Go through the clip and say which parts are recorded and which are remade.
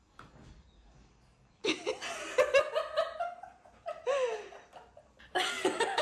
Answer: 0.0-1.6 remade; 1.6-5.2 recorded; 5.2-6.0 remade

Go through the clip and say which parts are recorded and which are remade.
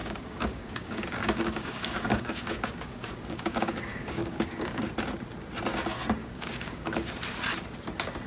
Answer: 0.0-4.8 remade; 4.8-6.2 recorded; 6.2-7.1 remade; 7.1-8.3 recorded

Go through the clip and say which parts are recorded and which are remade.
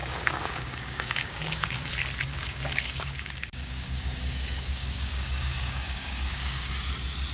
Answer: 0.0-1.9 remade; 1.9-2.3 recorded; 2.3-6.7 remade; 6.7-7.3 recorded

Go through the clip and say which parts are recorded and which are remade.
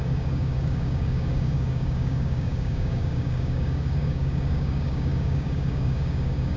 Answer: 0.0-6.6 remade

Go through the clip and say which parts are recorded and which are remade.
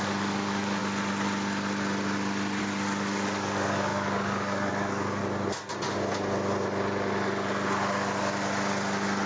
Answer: 0.0-0.8 remade; 0.8-2.6 recorded; 2.6-5.2 remade; 5.2-9.3 recorded